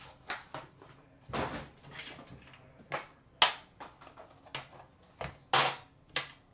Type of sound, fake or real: real